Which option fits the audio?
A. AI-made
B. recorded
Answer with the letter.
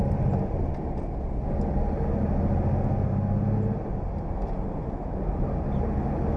B